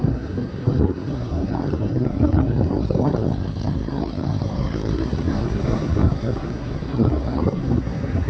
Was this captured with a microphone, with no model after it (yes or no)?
no